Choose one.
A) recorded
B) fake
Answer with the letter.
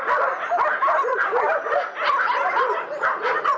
A